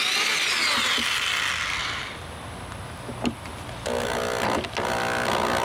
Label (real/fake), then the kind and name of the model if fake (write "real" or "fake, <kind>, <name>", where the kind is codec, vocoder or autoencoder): real